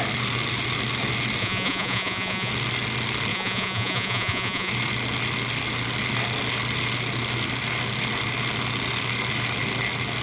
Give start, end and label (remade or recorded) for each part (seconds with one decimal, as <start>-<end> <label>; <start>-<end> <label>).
0.0-1.4 recorded; 1.4-2.5 remade; 2.5-3.3 recorded; 3.3-4.7 remade; 4.7-10.2 recorded